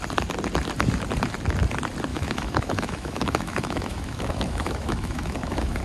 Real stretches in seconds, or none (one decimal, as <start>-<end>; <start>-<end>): 0.0-2.1